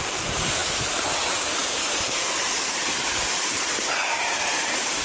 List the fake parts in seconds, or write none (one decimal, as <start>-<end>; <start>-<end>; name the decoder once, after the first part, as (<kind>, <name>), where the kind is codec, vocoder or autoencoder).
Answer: 0.0-5.0 (vocoder, BigVGAN v2)